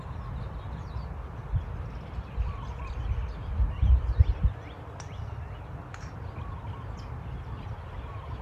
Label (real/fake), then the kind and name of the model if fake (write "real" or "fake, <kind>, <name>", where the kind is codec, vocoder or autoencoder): real